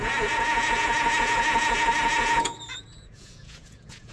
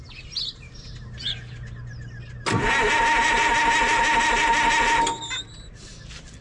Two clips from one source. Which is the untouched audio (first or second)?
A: second